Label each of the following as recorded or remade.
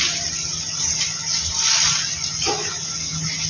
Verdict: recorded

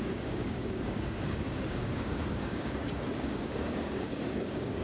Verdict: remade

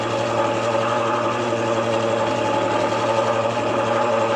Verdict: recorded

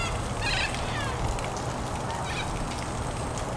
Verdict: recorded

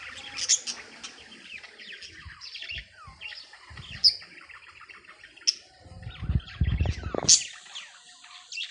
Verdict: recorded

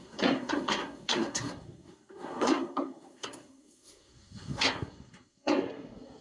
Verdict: remade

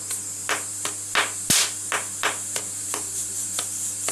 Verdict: recorded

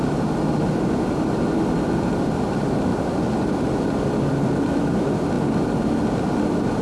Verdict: recorded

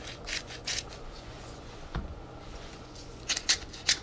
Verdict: remade